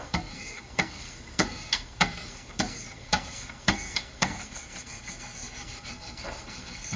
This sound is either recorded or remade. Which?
remade